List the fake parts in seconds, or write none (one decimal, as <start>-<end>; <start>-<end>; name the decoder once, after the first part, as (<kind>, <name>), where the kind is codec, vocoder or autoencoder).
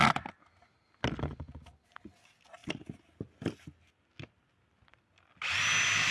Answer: none